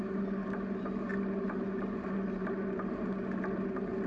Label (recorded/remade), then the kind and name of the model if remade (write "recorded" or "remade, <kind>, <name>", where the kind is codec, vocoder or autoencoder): recorded